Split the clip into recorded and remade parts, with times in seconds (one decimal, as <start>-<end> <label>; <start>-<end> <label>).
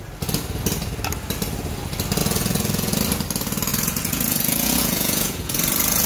0.0-2.2 recorded; 2.2-2.9 remade; 2.9-3.7 recorded; 3.7-6.1 remade